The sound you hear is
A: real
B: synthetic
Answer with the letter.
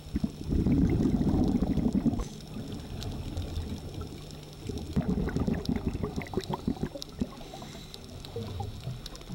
A